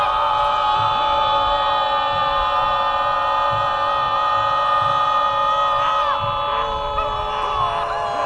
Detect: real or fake real